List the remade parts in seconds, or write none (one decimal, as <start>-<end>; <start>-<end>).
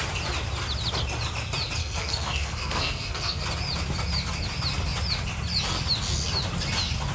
1.8-3.4